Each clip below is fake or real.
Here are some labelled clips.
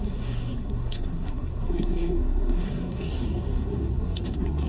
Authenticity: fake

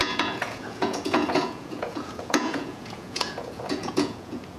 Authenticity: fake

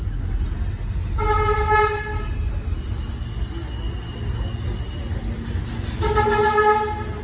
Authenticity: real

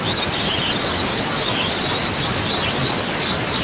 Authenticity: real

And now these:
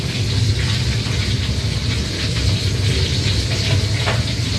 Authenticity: real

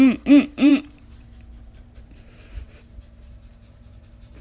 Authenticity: fake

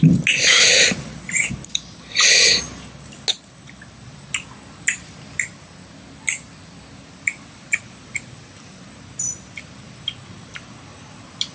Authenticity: real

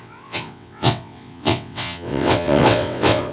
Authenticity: fake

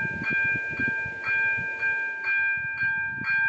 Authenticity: real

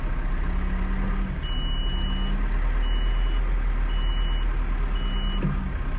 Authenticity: real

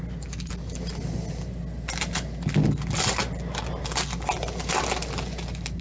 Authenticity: real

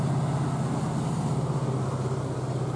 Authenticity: real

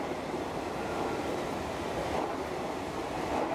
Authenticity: real